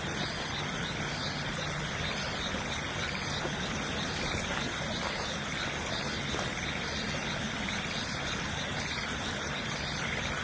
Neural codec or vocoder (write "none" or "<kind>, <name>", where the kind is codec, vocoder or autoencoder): none